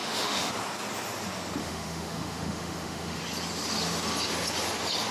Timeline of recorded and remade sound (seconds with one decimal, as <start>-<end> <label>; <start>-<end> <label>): 0.0-0.5 remade; 0.5-1.6 recorded; 1.6-3.2 remade; 3.2-5.1 recorded